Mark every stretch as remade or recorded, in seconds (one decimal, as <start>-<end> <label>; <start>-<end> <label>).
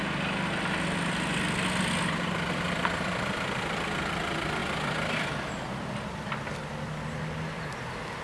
0.0-8.2 recorded